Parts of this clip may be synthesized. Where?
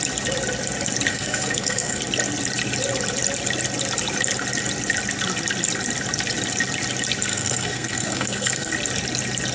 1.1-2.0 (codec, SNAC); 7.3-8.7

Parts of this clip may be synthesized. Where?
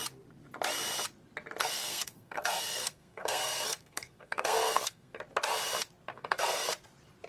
1.6-5.1 (codec, SNAC); 6.1-6.7